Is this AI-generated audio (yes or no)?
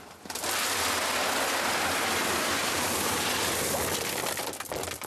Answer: no